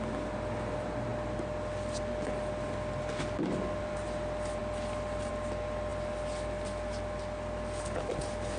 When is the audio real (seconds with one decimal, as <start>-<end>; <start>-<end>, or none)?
0.0-8.6